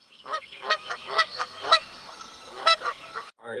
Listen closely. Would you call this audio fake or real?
fake